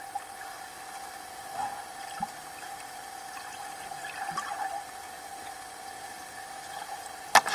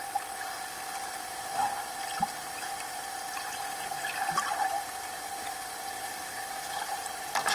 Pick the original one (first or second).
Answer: first